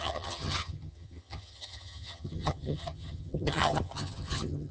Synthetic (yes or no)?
yes